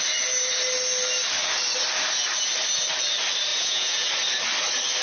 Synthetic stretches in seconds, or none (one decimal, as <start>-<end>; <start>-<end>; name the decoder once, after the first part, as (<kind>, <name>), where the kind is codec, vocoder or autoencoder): 3.5-4.1 (vocoder, Vocos)

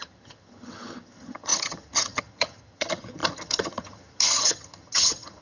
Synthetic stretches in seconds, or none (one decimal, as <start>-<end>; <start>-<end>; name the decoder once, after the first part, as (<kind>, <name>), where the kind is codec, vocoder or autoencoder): 0.0-5.4 (vocoder, HiFi-GAN)